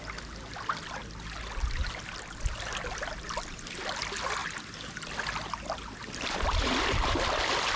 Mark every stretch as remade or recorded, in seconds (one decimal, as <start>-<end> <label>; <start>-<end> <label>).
0.0-7.8 recorded